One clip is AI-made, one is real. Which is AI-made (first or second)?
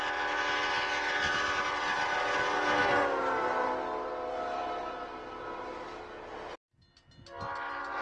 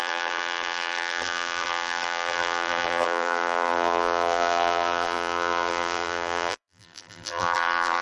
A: second